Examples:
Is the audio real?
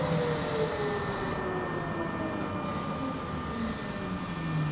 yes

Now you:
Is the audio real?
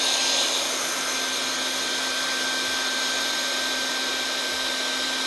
yes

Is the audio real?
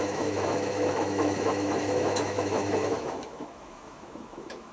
no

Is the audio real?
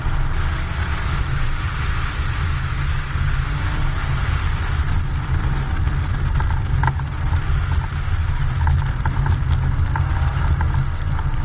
yes